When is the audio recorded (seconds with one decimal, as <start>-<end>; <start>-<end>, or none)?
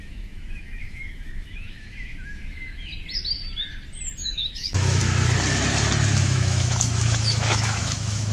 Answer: 2.9-4.2; 5.0-6.2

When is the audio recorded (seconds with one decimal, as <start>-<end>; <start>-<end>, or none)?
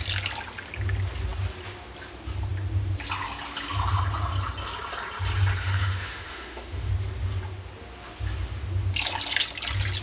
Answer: 0.0-5.6; 6.9-10.0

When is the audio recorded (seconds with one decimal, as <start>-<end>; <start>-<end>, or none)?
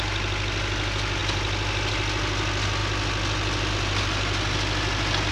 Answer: 0.0-5.3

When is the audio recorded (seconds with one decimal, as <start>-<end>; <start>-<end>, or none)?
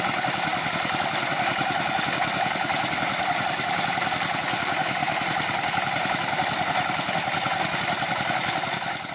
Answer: 0.0-9.1